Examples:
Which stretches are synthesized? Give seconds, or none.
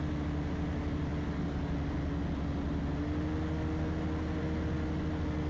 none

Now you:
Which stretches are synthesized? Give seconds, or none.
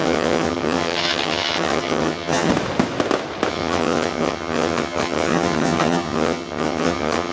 0.0-2.5 (vocoder, HiFi-GAN); 3.5-7.3